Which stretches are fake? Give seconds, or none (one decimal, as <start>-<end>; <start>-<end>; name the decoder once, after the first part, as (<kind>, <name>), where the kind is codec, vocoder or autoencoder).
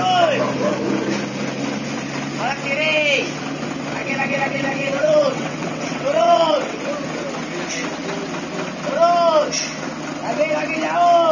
4.0-6.8 (vocoder, WaveNeXt)